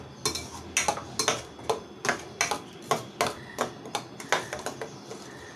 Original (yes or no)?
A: yes